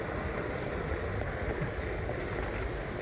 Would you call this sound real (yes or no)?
yes